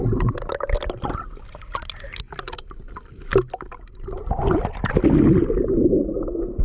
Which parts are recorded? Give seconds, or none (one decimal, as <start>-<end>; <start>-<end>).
0.0-6.6